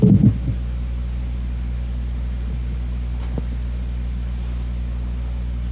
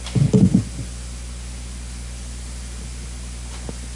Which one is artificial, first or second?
first